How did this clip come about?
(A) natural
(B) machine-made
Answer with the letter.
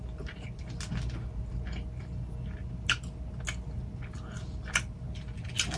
A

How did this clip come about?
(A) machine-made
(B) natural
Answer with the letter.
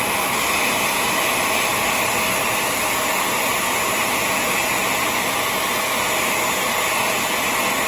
B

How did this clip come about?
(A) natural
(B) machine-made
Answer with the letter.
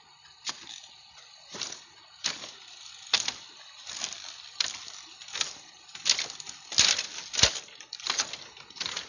A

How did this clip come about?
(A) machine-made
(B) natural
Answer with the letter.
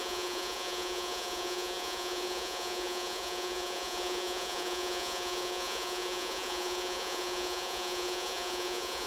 A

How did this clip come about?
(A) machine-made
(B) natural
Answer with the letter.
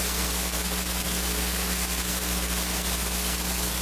A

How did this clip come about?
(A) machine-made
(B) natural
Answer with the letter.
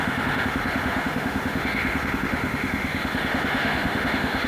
A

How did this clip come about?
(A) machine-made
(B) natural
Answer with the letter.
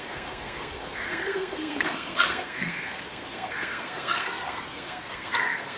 A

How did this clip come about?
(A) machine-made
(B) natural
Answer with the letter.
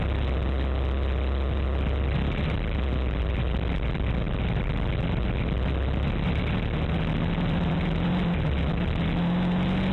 B